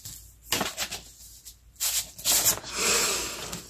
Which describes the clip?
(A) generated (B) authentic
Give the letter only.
B